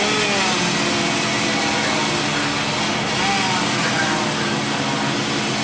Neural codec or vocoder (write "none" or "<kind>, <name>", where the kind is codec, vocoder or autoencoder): none